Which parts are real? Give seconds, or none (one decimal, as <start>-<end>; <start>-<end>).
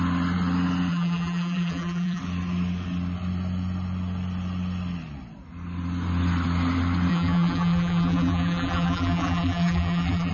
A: 0.0-0.9; 2.2-7.1